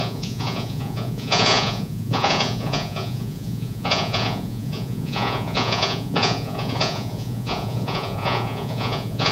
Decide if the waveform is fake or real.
fake